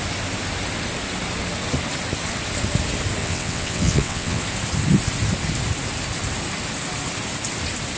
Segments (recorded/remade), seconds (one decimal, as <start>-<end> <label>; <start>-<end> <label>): 0.0-3.2 recorded; 3.2-4.4 remade; 4.4-8.0 recorded